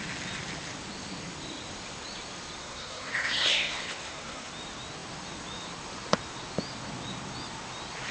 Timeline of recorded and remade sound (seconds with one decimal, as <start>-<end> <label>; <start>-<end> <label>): 0.0-2.6 recorded; 2.6-4.5 remade; 4.5-8.1 recorded